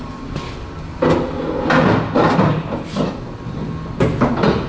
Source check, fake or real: real